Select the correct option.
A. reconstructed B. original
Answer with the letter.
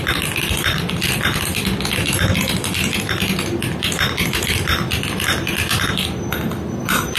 B